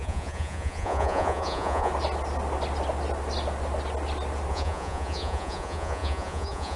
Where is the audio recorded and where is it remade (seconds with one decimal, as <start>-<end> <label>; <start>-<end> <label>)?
0.0-1.9 remade; 1.9-4.5 recorded; 4.5-6.8 remade